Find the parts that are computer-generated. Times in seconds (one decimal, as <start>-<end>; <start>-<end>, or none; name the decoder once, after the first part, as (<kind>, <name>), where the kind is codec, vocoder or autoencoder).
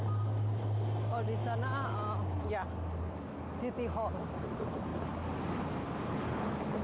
none